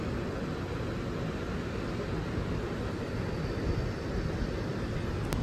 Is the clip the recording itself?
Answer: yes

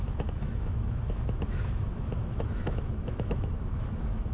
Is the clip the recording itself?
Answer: no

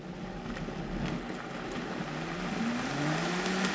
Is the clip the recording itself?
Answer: yes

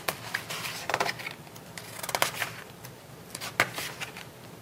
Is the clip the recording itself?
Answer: yes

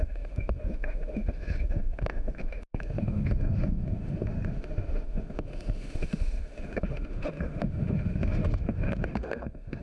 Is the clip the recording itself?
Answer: no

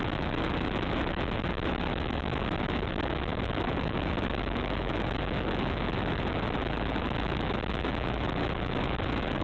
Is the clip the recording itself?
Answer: no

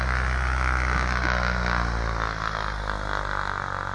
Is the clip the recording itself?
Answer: yes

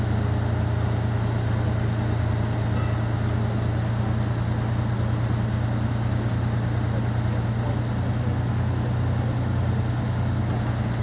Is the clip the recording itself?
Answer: yes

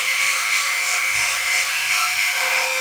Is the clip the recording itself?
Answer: no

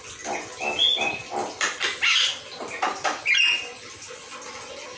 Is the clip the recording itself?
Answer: yes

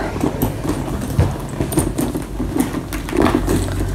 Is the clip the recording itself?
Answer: yes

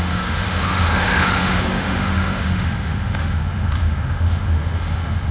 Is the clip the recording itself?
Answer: no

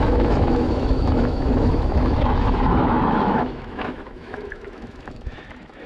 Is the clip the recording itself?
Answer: no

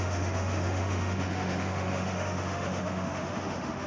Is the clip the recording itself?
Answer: no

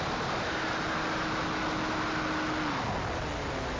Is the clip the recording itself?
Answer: yes